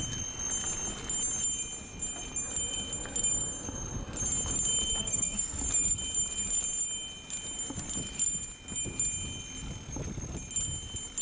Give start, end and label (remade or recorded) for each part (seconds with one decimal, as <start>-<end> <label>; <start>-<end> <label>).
0.0-5.0 recorded; 5.0-5.6 remade; 5.6-11.2 recorded